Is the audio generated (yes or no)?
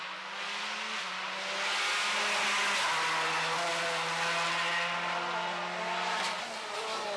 no